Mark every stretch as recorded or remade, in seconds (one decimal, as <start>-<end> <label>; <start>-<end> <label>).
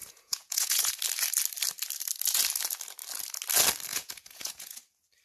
0.0-0.9 remade; 0.9-3.9 recorded; 3.9-4.8 remade; 4.8-5.2 recorded